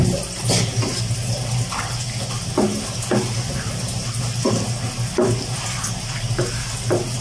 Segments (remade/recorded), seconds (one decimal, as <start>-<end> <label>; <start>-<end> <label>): 0.0-7.2 recorded